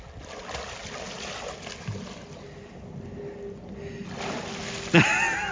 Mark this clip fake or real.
real